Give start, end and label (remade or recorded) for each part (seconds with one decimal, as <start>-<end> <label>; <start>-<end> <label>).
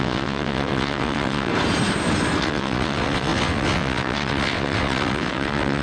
0.0-1.5 remade; 1.5-2.4 recorded; 2.4-5.8 remade